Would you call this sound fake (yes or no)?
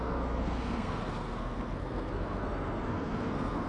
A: yes